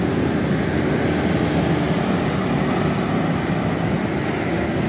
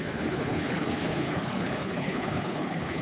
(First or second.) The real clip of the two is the first